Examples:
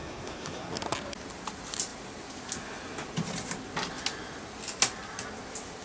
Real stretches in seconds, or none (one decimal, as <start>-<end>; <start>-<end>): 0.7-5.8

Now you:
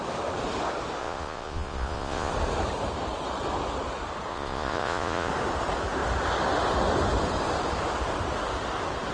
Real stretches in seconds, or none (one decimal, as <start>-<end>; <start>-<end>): 0.0-1.0; 2.3-4.3; 5.3-9.1

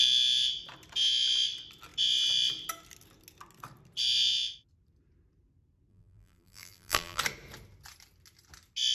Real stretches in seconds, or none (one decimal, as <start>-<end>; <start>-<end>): 0.0-5.9; 7.2-8.9